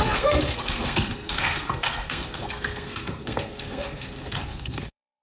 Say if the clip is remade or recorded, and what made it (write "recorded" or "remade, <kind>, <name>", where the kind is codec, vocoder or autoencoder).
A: remade, codec, SNAC